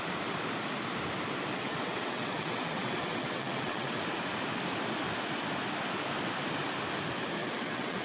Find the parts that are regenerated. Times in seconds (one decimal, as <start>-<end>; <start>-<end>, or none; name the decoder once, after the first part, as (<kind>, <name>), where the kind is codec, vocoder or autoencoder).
1.5-4.0 (vocoder, WaveNeXt); 7.4-8.0

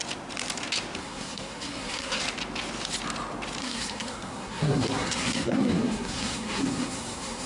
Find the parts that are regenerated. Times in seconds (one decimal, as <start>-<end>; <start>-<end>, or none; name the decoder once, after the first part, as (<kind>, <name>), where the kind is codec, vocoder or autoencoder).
1.0-2.2 (codec, SNAC); 3.6-7.5

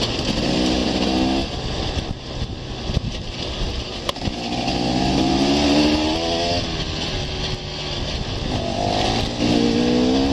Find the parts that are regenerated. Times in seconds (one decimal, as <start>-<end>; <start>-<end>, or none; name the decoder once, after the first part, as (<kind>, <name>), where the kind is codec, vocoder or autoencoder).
none